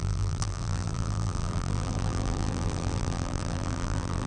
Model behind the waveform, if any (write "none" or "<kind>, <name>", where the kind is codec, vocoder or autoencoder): vocoder, BigVGAN v2